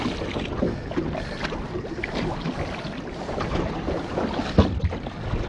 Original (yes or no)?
yes